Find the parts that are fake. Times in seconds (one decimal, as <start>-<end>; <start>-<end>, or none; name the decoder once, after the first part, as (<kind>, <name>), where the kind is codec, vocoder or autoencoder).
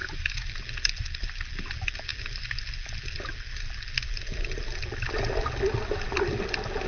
0.0-0.5 (autoencoder, DAC-VAE)